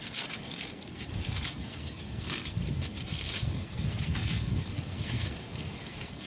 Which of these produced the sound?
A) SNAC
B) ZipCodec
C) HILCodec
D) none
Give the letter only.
A